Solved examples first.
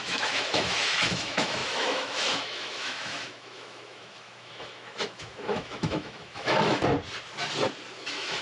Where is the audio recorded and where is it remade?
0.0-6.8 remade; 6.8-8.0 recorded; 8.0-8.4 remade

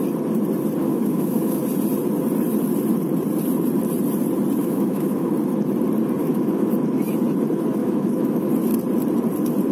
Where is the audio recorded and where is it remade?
0.0-0.8 recorded; 0.8-1.6 remade; 1.6-4.6 recorded; 4.6-5.3 remade; 5.3-6.2 recorded; 6.2-6.7 remade; 6.7-7.8 recorded; 7.8-8.5 remade; 8.5-9.7 recorded

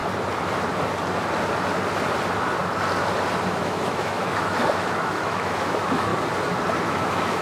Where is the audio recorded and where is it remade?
0.0-3.5 recorded; 3.5-6.1 remade; 6.1-6.8 recorded; 6.8-7.4 remade